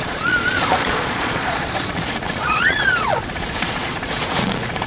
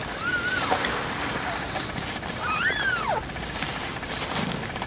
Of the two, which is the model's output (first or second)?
first